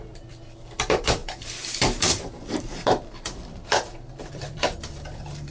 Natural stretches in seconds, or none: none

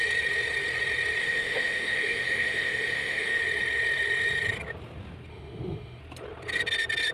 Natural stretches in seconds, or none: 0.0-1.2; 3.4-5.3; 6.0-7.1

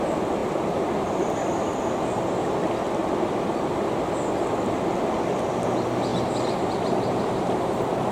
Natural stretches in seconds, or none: 0.0-8.1